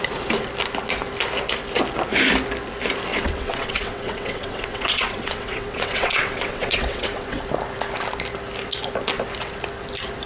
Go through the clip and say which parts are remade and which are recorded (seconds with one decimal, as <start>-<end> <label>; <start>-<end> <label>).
0.0-3.1 recorded; 3.1-7.4 remade; 7.4-10.3 recorded